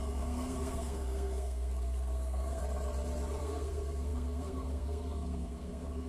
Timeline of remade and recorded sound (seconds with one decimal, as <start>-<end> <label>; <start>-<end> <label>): 0.0-2.6 remade; 2.6-3.4 recorded; 3.4-6.1 remade